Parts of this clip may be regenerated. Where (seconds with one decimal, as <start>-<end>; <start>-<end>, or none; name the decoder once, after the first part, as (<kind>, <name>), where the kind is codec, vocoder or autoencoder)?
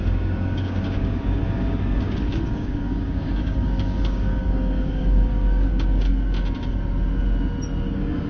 0.0-6.1 (codec, DAC); 7.8-8.3